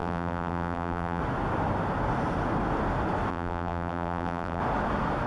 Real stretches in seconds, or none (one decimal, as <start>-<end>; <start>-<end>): 1.2-3.3; 4.6-5.3

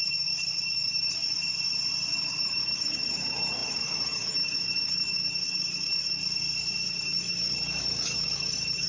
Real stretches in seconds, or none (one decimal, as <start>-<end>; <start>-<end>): 1.2-2.2; 6.2-6.9

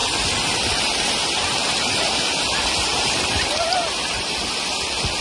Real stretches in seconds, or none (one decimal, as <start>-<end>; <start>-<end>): 2.1-2.9; 4.5-5.2

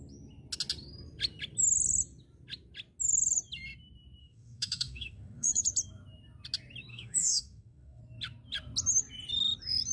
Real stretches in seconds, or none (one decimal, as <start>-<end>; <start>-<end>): 0.0-4.2; 5.6-6.9; 8.0-9.9

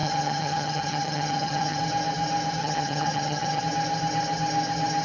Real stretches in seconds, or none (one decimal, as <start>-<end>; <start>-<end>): 1.8-2.6; 3.6-5.0

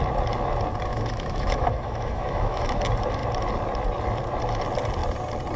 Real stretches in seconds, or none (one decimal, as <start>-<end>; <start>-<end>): 0.0-0.9; 2.8-5.6

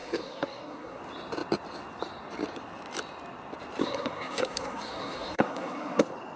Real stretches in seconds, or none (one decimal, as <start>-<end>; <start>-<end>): 1.0-3.8; 6.0-6.4

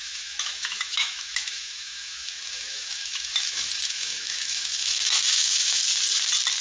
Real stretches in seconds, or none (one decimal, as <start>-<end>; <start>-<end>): 5.8-6.6